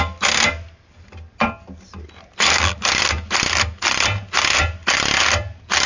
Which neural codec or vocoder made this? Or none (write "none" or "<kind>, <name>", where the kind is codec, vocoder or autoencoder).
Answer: none